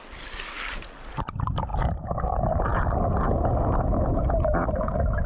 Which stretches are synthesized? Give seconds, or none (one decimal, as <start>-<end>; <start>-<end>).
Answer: 1.7-2.2